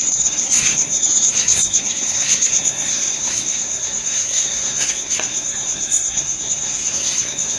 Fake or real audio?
fake